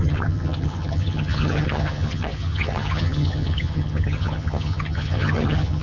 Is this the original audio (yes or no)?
no